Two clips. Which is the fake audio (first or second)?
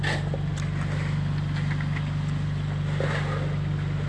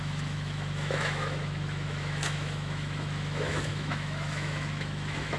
second